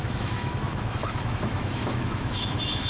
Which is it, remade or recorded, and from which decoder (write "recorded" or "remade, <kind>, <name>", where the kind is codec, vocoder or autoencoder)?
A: remade, autoencoder, DAC-VAE